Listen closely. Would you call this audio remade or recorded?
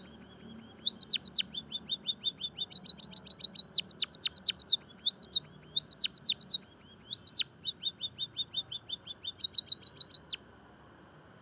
remade